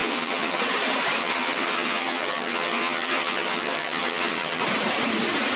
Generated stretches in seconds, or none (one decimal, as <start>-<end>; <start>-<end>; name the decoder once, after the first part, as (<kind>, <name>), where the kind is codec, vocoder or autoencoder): 0.0-0.6 (vocoder, HiFi-GAN); 1.2-4.6